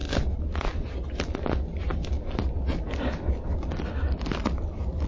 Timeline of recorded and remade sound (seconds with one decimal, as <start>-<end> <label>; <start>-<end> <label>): 0.0-5.1 recorded